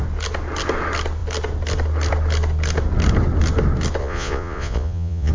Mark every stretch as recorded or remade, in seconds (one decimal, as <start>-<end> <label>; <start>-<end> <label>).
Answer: 0.0-4.0 recorded; 4.0-5.3 remade